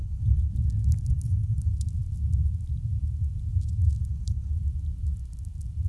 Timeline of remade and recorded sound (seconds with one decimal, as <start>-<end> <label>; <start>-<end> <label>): 0.0-0.5 remade; 0.5-1.1 recorded; 1.1-1.7 remade; 1.7-4.0 recorded; 4.0-4.5 remade; 4.5-5.9 recorded